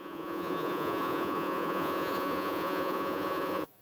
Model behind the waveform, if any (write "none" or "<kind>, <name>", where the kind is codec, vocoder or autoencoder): vocoder, Vocos